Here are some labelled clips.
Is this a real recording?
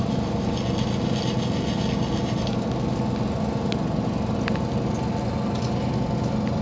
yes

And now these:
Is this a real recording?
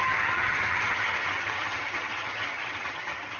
no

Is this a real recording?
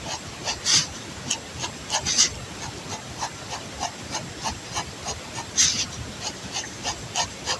yes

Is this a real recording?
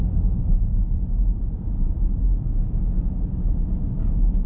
yes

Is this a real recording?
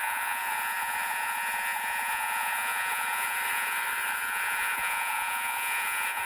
no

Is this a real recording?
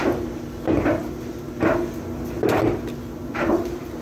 yes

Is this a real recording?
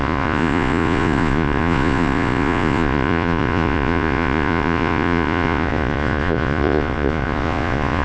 no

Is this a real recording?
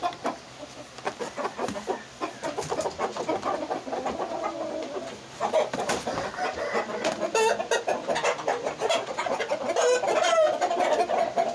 yes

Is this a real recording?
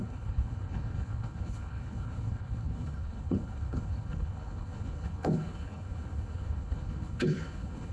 no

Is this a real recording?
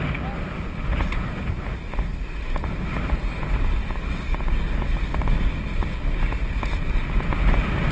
yes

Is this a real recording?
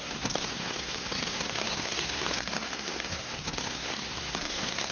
no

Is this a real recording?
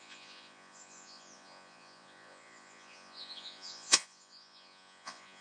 no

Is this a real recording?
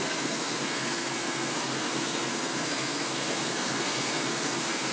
no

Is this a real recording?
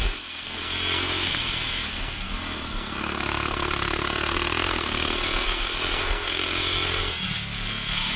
no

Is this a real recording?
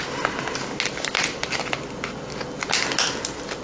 yes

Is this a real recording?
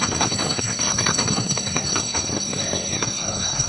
no